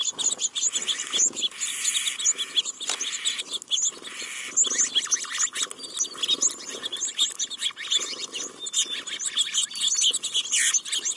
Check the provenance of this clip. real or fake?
real